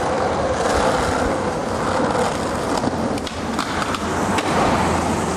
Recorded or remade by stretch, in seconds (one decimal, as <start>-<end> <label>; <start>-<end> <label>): 0.0-5.4 recorded